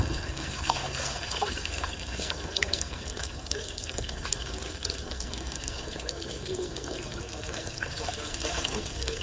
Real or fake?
fake